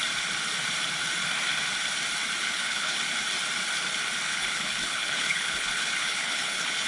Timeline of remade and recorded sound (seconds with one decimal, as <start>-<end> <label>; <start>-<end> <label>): 0.0-2.4 recorded; 2.4-3.0 remade; 3.0-4.3 recorded; 4.3-6.9 remade